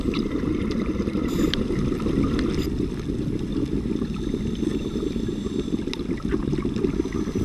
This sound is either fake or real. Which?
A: real